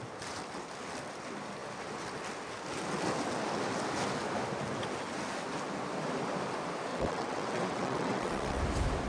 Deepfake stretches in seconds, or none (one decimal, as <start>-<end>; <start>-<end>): 6.9-8.6